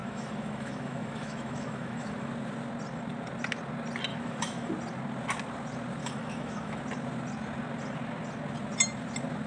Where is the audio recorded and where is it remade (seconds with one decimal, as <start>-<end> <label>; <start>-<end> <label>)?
0.0-2.3 remade; 2.3-4.1 recorded; 4.1-4.7 remade; 4.7-6.0 recorded; 6.0-6.8 remade; 6.8-9.5 recorded